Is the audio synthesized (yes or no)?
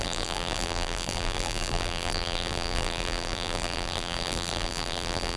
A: yes